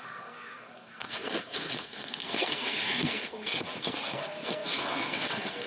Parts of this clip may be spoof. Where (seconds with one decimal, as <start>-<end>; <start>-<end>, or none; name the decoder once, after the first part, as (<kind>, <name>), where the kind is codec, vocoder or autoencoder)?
0.0-5.7 (codec, SNAC)